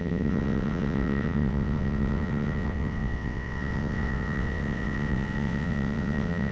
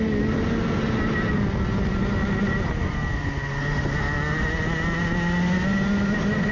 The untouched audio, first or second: second